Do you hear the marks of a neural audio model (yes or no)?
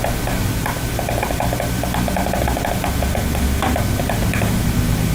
no